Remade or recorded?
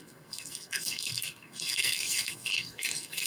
remade